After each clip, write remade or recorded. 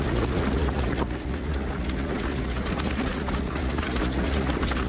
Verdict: remade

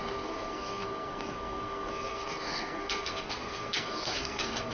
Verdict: remade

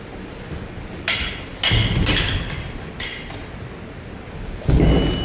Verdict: recorded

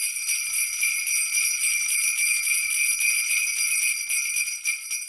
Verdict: recorded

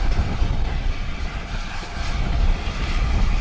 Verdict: recorded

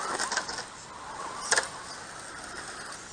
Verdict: recorded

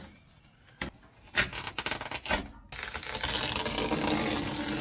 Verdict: recorded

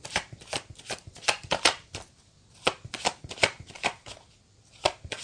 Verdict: remade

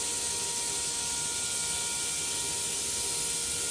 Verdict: recorded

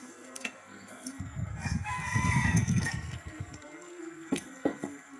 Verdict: remade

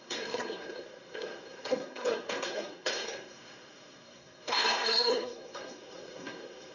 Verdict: remade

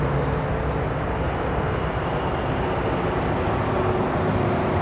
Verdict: recorded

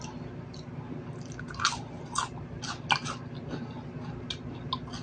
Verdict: recorded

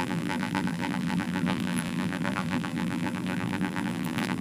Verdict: remade